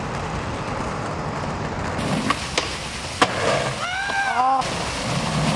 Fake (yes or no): no